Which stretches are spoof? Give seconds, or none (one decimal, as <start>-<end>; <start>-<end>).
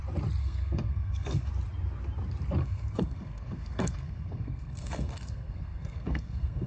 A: 0.4-1.5; 2.6-6.7